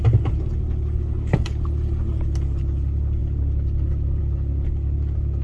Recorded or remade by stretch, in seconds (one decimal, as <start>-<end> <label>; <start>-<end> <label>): 0.0-5.4 recorded